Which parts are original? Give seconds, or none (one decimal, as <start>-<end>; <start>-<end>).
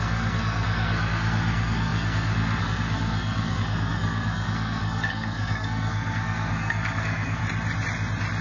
7.4-8.4